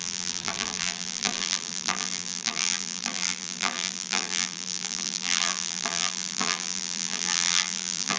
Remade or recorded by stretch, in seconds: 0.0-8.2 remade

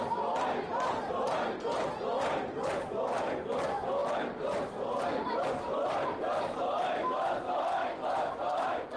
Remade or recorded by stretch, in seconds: 0.0-9.0 recorded

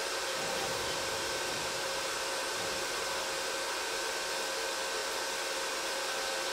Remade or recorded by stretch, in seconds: 0.0-3.0 remade; 3.0-6.5 recorded

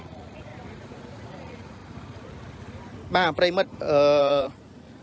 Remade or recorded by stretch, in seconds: 0.0-0.5 remade; 0.5-1.3 recorded; 1.3-1.8 remade; 1.8-4.2 recorded; 4.2-5.0 remade

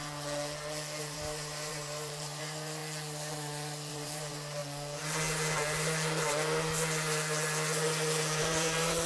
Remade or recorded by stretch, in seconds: 0.0-1.0 recorded; 1.0-2.8 remade; 2.8-3.9 recorded; 3.9-4.6 remade; 4.6-8.4 recorded; 8.4-9.1 remade

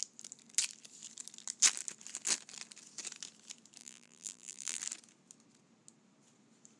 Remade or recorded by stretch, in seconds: 0.0-3.8 recorded; 3.8-4.8 remade; 4.8-6.8 recorded

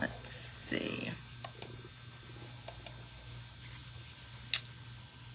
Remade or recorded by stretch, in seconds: 0.0-5.3 recorded

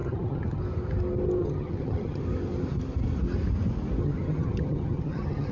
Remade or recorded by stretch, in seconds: 0.0-0.6 remade; 0.6-1.4 recorded; 1.4-2.2 remade; 2.2-4.0 recorded; 4.0-5.5 remade